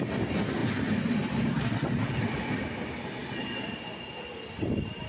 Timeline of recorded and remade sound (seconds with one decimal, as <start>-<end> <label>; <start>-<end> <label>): 0.0-5.1 recorded

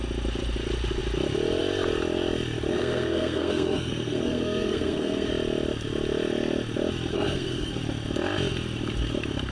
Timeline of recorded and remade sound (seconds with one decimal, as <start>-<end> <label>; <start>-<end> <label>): 0.0-2.7 recorded; 2.7-5.3 remade; 5.3-7.1 recorded; 7.1-7.8 remade; 7.8-9.5 recorded

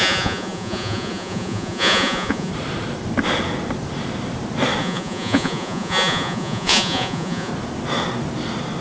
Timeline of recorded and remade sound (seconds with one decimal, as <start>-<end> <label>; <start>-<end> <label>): 0.0-2.5 remade; 2.5-4.8 recorded; 4.8-7.5 remade; 7.5-8.8 recorded

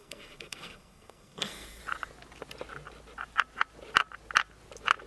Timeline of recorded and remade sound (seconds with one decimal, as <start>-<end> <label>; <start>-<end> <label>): 0.0-1.8 remade; 1.8-5.1 recorded

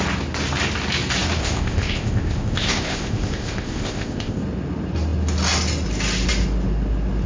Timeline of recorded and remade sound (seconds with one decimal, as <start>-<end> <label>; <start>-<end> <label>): 0.0-1.4 recorded; 1.4-4.4 remade; 4.4-7.3 recorded